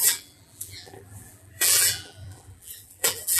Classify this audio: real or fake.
fake